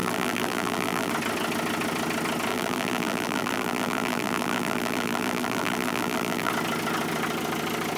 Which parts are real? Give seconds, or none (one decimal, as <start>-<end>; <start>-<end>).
1.1-2.5; 6.5-8.0